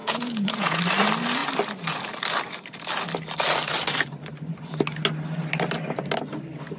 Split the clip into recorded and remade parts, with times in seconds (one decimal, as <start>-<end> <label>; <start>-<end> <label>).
0.0-0.8 remade; 0.8-6.8 recorded